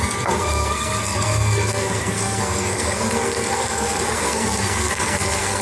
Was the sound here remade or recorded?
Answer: remade